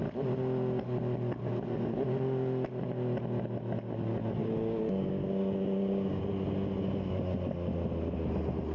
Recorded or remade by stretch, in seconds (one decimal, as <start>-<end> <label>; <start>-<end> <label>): 0.0-4.4 recorded; 4.4-6.2 remade; 6.2-8.7 recorded